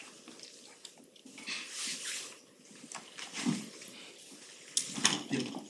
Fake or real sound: real